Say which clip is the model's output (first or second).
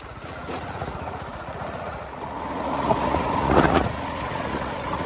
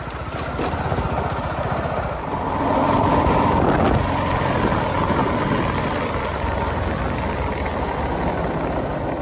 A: first